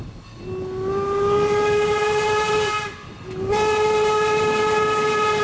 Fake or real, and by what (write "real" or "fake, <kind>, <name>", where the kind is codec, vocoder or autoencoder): real